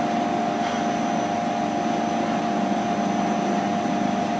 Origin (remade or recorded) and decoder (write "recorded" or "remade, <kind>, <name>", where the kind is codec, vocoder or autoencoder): recorded